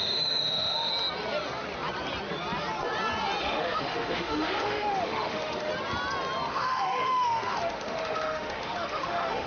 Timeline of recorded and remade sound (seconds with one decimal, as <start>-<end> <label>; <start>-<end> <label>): 0.0-0.9 remade; 0.9-3.4 recorded; 3.4-5.7 remade; 5.7-6.5 recorded; 6.5-9.5 remade